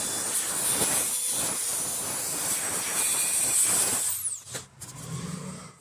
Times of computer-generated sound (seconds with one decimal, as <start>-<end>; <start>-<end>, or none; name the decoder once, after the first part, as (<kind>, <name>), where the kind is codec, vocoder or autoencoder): none